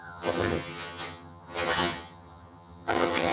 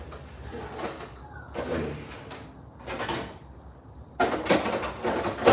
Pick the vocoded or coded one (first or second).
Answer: first